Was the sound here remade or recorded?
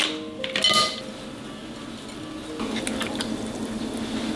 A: recorded